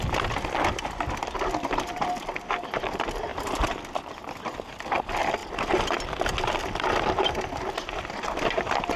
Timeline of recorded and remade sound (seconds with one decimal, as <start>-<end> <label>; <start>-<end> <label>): 0.0-9.0 recorded